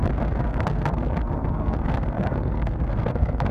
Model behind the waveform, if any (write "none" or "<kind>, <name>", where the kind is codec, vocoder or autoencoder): codec, SNAC